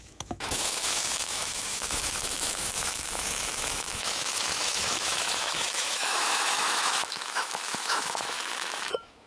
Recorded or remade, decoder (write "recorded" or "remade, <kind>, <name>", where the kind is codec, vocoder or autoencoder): remade, autoencoder, DAC-VAE